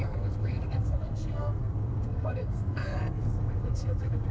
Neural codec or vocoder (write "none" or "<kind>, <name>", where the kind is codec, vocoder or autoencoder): codec, SNAC